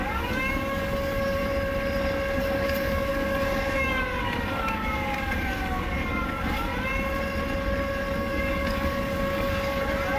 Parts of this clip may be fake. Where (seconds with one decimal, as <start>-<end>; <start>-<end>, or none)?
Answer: 0.0-1.4; 2.4-6.7; 8.2-10.2